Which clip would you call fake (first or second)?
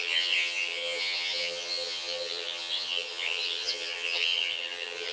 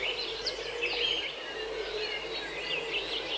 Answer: first